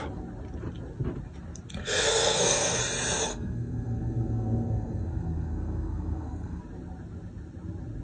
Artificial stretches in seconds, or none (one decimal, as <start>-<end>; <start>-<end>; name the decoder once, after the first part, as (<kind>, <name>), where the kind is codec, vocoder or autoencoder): 1.8-2.8 (codec, SNAC); 3.3-6.6